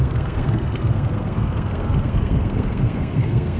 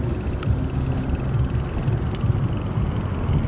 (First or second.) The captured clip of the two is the second